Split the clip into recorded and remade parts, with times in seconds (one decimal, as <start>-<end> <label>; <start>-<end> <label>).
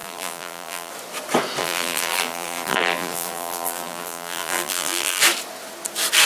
0.0-0.9 remade; 0.9-1.6 recorded; 1.6-5.2 remade; 5.2-6.3 recorded